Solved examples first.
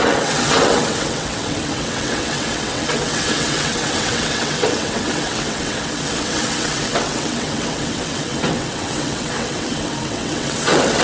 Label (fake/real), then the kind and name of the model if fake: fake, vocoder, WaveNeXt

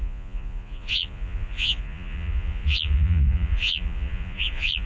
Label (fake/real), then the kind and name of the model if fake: fake, vocoder, Vocos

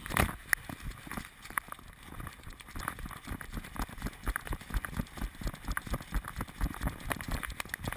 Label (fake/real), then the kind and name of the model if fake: real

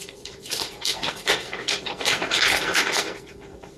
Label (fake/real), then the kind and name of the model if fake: fake, codec, SNAC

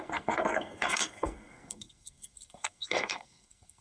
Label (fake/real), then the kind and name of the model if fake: fake, codec, SNAC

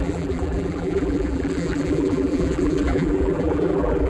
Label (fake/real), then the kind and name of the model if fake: fake, vocoder, BigVGAN v2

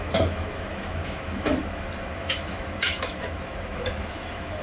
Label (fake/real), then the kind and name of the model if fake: fake, autoencoder, DAC-VAE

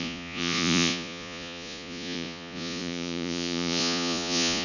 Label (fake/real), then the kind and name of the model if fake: fake, vocoder, Vocos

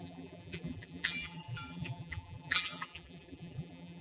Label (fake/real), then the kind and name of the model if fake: fake, vocoder, BigVGAN v2